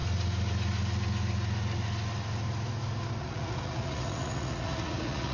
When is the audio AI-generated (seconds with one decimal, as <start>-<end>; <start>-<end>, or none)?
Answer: 3.2-5.3